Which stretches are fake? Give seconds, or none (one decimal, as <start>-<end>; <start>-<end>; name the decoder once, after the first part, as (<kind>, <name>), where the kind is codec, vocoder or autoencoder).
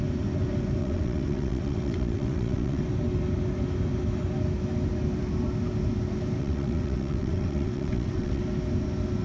0.8-2.8 (vocoder, WaveNeXt); 6.4-8.4